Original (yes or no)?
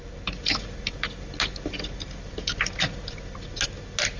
yes